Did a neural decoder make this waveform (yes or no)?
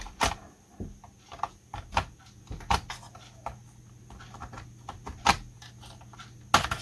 no